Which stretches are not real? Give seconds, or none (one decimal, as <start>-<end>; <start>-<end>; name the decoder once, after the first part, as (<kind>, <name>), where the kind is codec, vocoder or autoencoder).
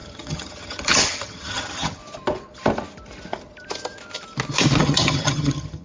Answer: 0.0-2.0 (vocoder, HiFi-GAN); 4.8-5.8